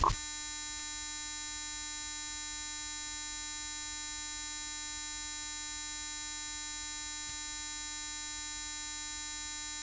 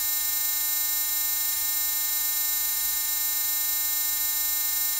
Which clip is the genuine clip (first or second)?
first